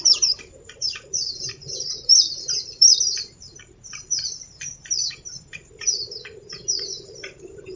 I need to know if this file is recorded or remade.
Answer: remade